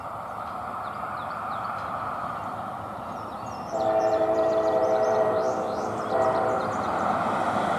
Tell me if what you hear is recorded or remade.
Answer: remade